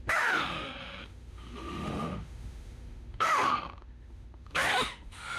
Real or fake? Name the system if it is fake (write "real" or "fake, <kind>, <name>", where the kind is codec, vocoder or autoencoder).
fake, autoencoder, DAC-VAE